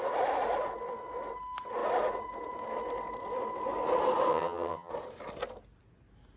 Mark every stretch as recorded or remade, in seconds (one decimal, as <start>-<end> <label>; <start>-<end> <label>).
0.0-4.3 recorded; 4.3-4.9 remade; 4.9-6.4 recorded